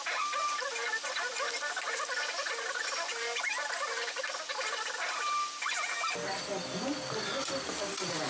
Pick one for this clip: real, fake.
real